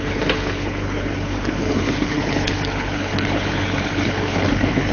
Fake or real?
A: fake